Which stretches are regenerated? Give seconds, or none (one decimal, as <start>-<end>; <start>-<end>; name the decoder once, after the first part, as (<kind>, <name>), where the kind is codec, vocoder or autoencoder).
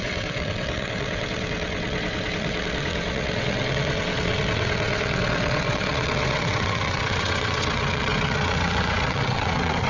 0.0-9.9 (vocoder, WaveNeXt)